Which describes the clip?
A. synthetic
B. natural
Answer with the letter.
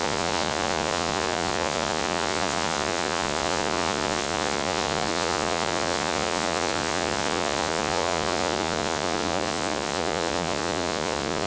A